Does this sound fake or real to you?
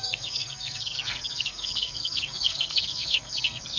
fake